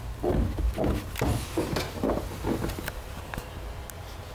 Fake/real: real